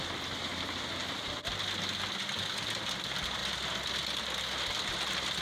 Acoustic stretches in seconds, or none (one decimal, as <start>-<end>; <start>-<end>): 0.0-5.4